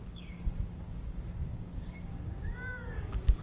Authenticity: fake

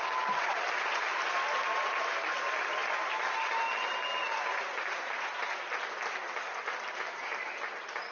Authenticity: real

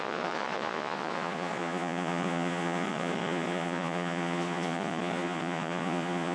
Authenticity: fake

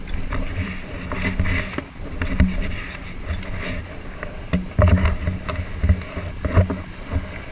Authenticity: real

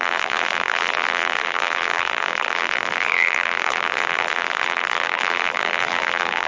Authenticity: fake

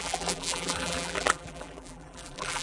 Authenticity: fake